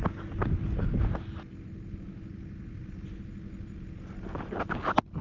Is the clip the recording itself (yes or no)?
yes